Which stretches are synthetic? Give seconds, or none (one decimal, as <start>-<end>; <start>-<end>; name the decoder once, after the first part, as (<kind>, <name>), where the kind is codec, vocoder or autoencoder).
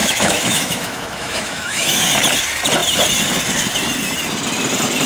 0.0-2.0 (autoencoder, DAC-VAE)